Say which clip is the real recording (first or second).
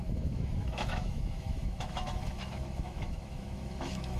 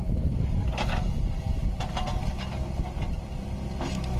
second